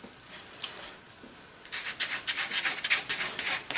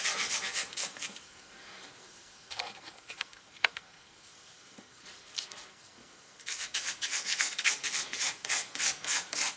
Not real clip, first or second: second